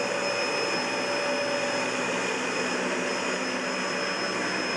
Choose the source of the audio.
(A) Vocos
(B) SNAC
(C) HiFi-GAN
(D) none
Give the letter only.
D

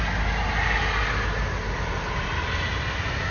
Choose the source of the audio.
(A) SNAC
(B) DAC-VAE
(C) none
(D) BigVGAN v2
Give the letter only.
C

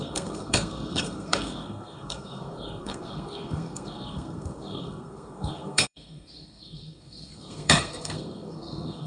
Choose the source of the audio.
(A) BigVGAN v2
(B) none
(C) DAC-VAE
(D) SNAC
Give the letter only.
D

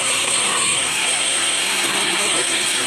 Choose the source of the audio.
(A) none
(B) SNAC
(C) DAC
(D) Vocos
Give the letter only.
B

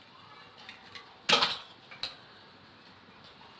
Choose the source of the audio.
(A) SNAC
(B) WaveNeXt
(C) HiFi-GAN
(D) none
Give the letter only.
D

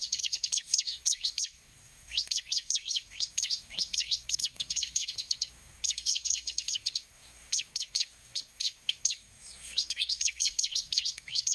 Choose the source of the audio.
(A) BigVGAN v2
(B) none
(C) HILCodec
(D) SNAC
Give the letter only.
D